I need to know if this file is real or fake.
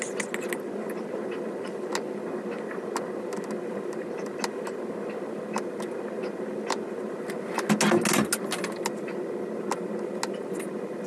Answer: real